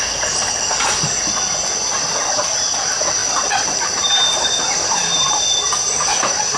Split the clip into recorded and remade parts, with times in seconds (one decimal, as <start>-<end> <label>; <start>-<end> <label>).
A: 0.0-3.2 recorded; 3.2-6.6 remade